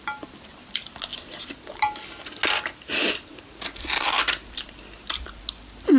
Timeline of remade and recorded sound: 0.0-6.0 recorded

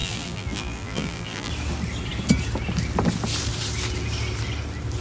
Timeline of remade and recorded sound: 0.0-1.5 remade; 1.5-5.0 recorded

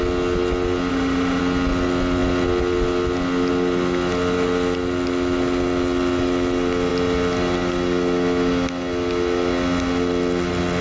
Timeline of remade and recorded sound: 0.0-0.9 recorded; 0.9-1.4 remade; 1.4-10.8 recorded

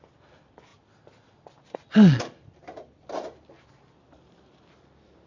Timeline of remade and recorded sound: 0.0-5.3 recorded